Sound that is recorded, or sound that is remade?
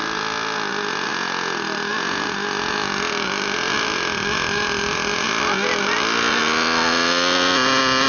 recorded